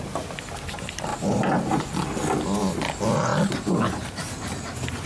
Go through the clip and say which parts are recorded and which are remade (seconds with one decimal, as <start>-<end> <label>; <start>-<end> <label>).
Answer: 0.0-1.1 recorded; 1.1-1.8 remade; 1.8-5.1 recorded